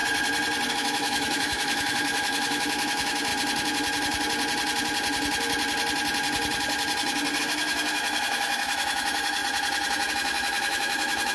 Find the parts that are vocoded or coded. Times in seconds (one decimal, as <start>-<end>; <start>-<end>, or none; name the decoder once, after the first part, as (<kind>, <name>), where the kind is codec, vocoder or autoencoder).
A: 0.7-3.3 (autoencoder, DAC-VAE); 7.4-9.4; 10.1-11.3